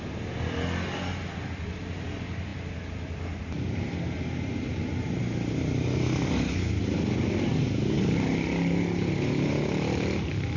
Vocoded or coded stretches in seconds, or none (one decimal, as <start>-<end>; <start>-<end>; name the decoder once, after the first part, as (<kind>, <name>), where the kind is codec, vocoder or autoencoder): none